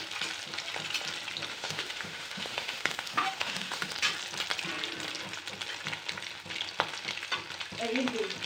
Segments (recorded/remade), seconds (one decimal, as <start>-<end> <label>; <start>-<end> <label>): 0.0-1.5 recorded; 1.5-3.9 remade; 3.9-8.5 recorded